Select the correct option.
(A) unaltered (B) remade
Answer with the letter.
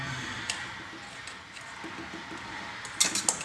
A